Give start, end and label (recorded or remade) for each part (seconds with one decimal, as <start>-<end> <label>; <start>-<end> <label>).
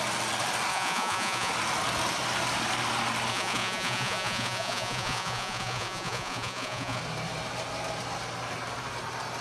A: 0.0-0.7 recorded; 0.7-1.5 remade; 1.5-3.3 recorded; 3.3-7.0 remade; 7.0-9.4 recorded